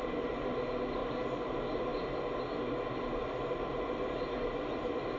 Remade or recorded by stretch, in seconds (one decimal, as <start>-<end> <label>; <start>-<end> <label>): 0.0-1.0 recorded; 1.0-1.5 remade; 1.5-5.2 recorded